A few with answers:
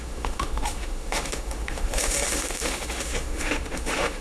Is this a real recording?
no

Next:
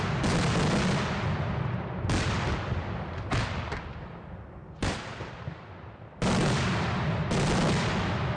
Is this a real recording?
yes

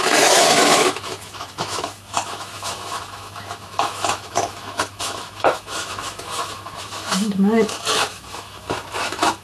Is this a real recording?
no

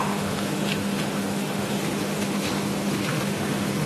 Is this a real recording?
no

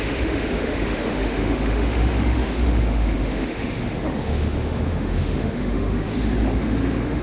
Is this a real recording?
no